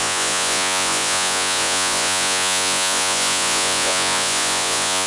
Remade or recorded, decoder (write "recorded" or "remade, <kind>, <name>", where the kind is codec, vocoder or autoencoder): remade, vocoder, Vocos